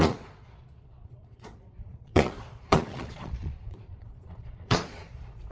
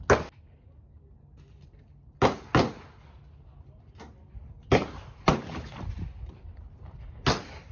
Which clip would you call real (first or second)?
second